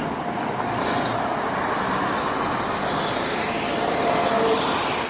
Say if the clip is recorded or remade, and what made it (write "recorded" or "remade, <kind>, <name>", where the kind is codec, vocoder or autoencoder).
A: recorded